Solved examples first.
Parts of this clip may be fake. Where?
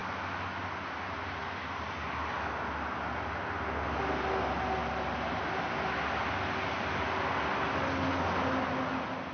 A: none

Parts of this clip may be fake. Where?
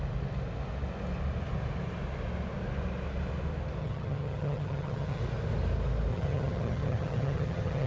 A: 3.8-5.2 (vocoder, HiFi-GAN); 6.1-7.9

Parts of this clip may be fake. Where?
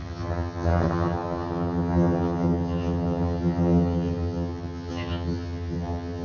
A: 0.0-6.2 (vocoder, HiFi-GAN)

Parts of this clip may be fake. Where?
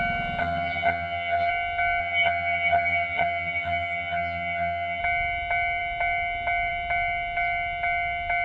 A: 0.4-1.5 (vocoder, HiFi-GAN); 2.0-5.0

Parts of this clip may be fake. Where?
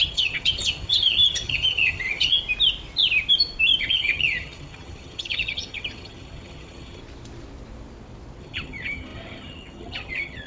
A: 0.0-2.4 (vocoder, HiFi-GAN); 3.8-7.0; 8.4-10.5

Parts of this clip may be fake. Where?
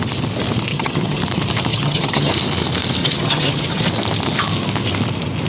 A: 0.7-1.2 (vocoder, HiFi-GAN); 1.7-2.3; 3.0-3.8